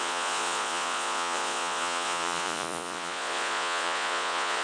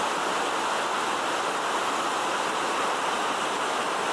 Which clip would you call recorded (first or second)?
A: second